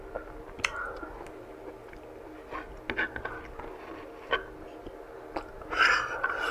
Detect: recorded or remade recorded